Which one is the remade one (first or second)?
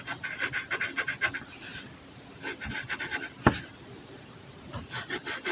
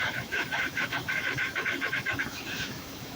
second